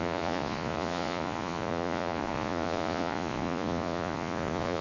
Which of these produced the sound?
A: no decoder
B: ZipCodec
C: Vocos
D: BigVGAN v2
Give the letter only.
C